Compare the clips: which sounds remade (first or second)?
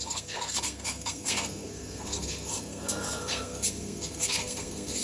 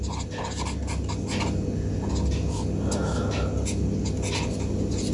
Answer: first